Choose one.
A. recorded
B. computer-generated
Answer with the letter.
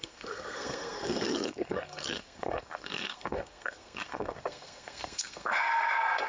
B